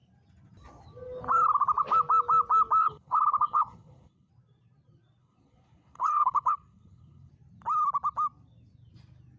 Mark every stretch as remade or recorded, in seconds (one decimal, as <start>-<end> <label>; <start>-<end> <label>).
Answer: 0.0-2.8 recorded; 2.8-4.3 remade; 4.3-5.2 recorded; 5.2-7.3 remade; 7.3-9.4 recorded